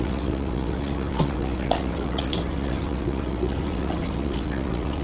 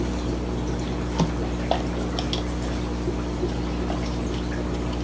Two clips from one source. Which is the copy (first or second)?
first